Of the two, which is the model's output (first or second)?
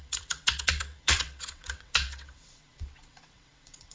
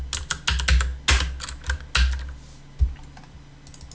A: first